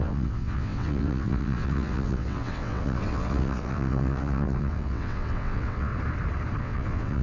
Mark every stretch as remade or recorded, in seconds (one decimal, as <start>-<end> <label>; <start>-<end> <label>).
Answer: 0.0-5.9 remade; 5.9-6.6 recorded; 6.6-7.2 remade